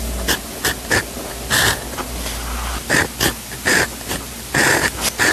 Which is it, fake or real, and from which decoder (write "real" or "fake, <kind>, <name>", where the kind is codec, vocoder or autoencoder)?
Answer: real